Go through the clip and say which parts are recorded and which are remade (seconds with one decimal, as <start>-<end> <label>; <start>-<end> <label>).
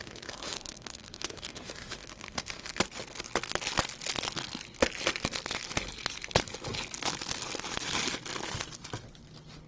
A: 0.0-2.8 remade; 2.8-9.7 recorded